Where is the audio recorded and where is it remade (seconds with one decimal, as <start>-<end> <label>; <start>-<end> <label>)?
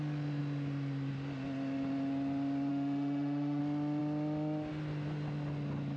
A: 0.0-2.7 recorded; 2.7-3.6 remade; 3.6-6.0 recorded